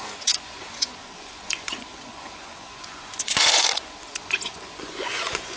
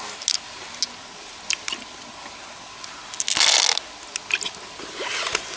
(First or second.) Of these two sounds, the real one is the second